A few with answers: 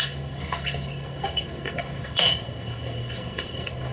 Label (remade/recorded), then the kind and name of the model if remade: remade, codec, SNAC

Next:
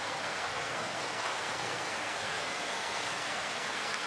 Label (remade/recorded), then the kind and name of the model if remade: remade, codec, SNAC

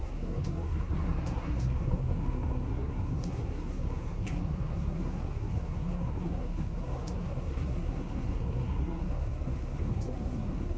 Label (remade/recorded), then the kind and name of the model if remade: remade, codec, SNAC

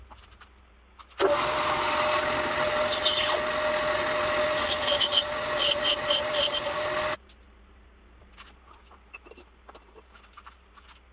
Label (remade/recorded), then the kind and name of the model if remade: recorded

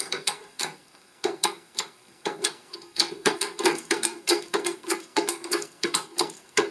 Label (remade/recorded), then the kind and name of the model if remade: remade, codec, SNAC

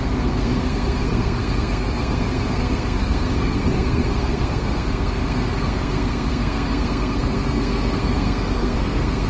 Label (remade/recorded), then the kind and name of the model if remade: remade, codec, SNAC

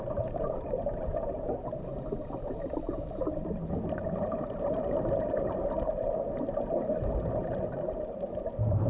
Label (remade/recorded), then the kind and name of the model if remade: recorded